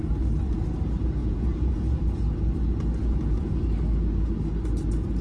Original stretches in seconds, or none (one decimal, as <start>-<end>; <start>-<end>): 0.0-1.2; 2.0-3.0; 3.6-5.2